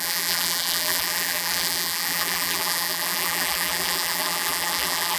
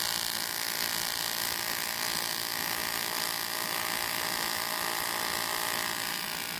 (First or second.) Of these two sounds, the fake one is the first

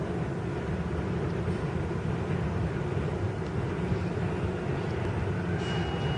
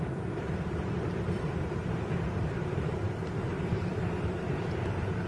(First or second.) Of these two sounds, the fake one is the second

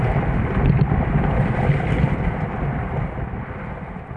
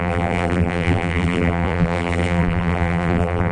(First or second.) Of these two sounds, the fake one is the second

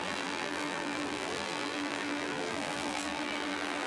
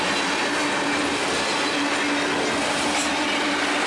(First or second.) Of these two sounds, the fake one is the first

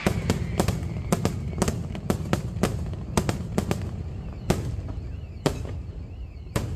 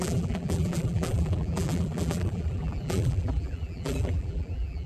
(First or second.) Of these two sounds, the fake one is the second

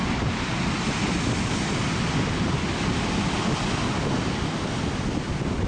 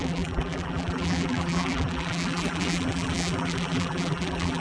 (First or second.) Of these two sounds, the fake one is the second